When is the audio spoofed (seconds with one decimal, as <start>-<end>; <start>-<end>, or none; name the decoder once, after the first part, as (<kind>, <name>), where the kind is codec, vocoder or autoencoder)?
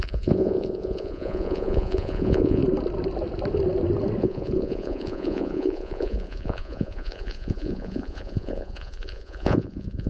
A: 0.0-2.6 (vocoder, Vocos); 4.2-10.1